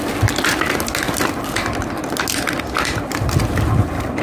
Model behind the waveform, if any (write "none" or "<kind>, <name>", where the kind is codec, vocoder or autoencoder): none